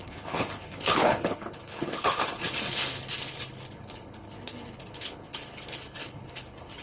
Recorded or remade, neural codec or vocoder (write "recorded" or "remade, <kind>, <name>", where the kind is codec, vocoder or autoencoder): remade, codec, HILCodec